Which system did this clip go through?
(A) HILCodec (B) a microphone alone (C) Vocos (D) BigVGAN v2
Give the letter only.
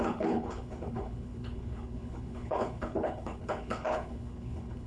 A